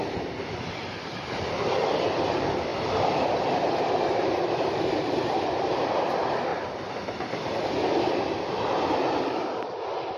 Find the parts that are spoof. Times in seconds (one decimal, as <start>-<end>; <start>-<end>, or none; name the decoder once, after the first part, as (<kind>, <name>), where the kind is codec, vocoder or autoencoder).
0.0-2.7 (vocoder, BigVGAN v2); 3.7-6.5; 8.0-10.2